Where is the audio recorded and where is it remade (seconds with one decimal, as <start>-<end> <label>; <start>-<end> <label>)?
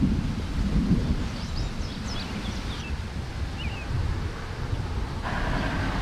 0.0-1.0 recorded; 1.0-1.6 remade; 1.6-6.0 recorded